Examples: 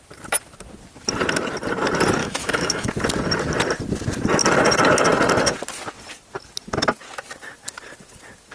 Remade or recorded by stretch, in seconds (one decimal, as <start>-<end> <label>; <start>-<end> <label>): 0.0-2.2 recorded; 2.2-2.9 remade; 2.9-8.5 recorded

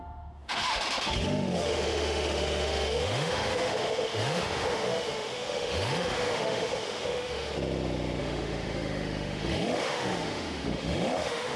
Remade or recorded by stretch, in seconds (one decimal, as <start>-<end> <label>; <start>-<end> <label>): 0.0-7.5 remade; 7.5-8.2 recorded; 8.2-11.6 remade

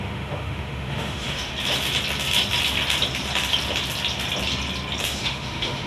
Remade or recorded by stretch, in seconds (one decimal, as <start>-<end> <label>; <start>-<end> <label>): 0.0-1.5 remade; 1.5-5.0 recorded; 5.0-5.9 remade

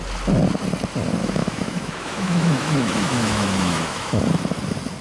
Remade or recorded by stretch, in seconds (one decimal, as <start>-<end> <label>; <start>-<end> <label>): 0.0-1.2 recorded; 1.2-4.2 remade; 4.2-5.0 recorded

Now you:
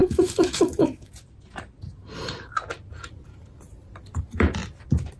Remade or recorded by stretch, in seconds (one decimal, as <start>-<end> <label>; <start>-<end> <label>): 0.0-1.1 remade; 1.1-5.2 recorded